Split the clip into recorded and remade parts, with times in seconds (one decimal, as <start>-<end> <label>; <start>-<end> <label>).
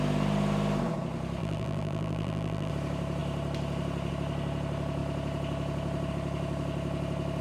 0.0-1.4 recorded; 1.4-2.7 remade; 2.7-7.4 recorded